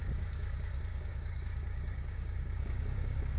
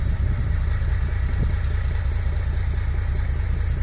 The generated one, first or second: first